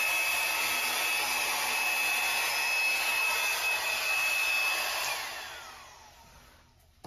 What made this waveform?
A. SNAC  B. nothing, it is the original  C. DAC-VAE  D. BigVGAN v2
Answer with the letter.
B